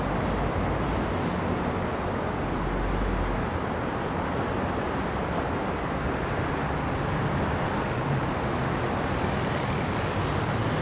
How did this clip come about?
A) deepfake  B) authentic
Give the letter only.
B